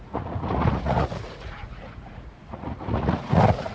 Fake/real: fake